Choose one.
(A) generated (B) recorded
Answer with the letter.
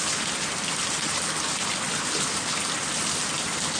B